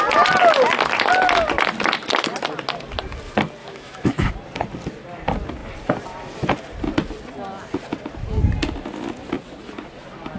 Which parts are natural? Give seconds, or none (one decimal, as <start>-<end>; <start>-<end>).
0.0-3.6; 4.3-10.4